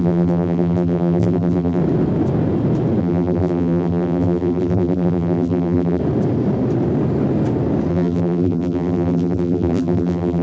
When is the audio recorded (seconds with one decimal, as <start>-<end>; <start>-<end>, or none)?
1.8-3.0; 6.0-7.9